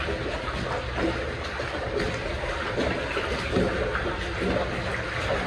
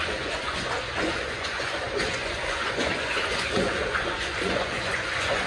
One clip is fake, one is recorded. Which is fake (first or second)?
second